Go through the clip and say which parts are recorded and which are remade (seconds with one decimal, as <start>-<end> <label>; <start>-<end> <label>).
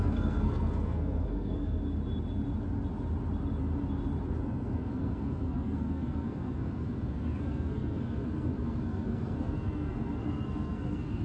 0.0-1.8 remade; 1.8-4.4 recorded; 4.4-11.2 remade